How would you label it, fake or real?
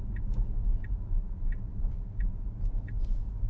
fake